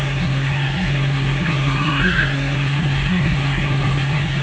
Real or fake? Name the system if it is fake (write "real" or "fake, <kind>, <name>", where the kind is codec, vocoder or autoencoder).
fake, codec, SNAC